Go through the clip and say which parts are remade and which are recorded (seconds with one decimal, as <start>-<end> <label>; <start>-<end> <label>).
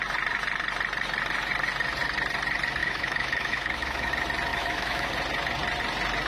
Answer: 0.0-2.8 recorded; 2.8-4.1 remade; 4.1-4.5 recorded; 4.5-5.1 remade; 5.1-6.3 recorded